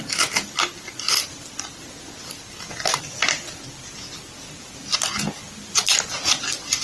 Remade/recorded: recorded